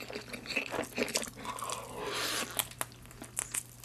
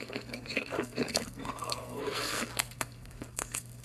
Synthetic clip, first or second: second